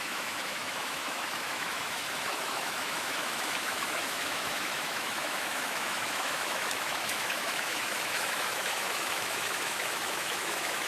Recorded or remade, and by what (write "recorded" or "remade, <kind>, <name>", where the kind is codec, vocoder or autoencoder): remade, autoencoder, DAC-VAE